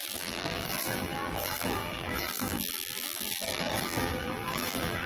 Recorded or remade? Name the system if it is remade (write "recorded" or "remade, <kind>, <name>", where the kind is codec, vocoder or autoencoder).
remade, vocoder, BigVGAN v2